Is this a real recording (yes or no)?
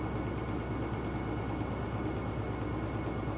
yes